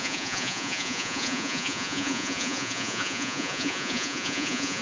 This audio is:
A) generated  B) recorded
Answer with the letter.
A